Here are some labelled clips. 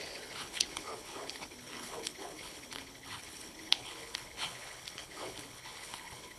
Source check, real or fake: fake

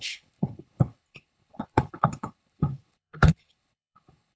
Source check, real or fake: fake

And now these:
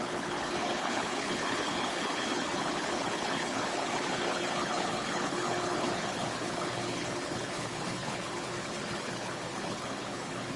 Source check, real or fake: fake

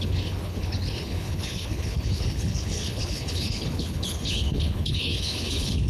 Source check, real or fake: fake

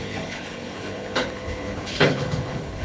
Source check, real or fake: fake